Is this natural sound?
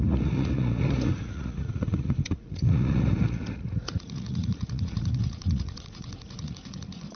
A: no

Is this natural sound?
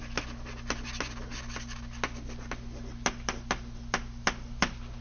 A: yes